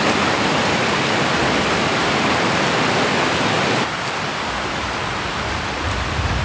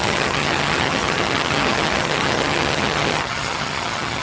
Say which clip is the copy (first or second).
second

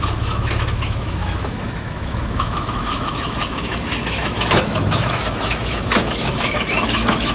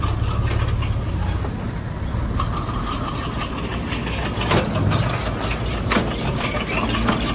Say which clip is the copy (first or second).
first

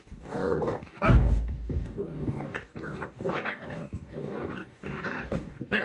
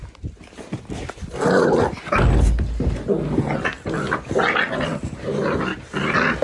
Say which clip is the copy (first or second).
first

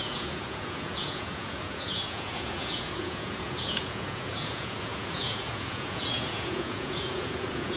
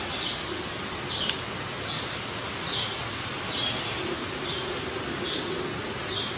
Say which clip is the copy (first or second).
first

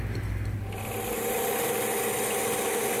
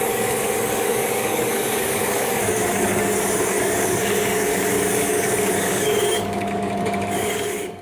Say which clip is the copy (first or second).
second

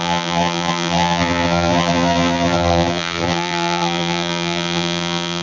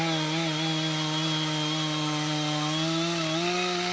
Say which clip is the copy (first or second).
first